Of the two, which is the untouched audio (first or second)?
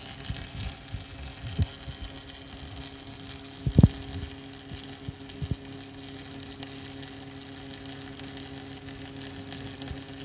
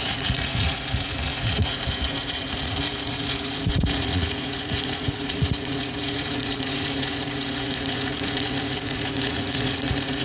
first